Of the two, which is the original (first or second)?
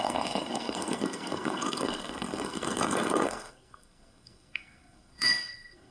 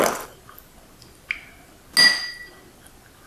second